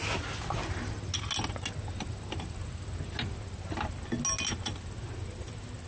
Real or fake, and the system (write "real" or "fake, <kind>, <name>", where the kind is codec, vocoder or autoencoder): real